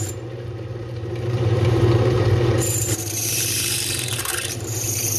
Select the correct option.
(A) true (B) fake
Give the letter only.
B